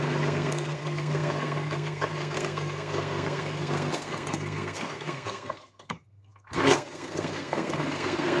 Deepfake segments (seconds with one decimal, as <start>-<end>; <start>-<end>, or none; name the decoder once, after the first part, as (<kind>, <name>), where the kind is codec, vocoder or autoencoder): 0.0-8.4 (codec, SNAC)